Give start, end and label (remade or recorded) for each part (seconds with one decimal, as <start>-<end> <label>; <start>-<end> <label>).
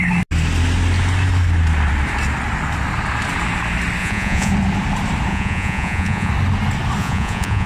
0.0-4.0 recorded; 4.0-4.5 remade; 4.5-5.3 recorded; 5.3-6.3 remade; 6.3-7.0 recorded; 7.0-7.7 remade